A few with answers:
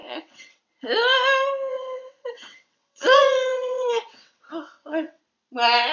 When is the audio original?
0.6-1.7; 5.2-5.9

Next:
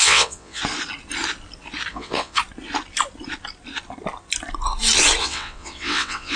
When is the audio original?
0.6-1.9; 2.4-5.2

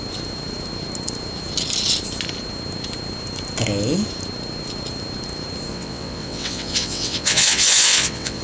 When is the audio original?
0.0-5.7

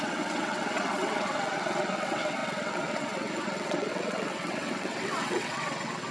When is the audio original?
none

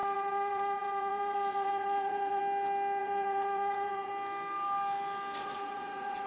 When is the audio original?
2.4-3.0; 4.1-5.4